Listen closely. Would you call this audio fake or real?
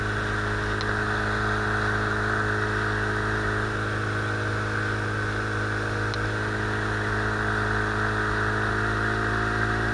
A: real